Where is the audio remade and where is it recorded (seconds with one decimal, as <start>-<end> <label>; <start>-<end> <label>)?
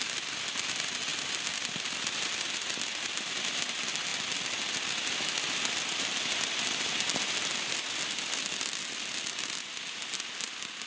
0.0-10.9 recorded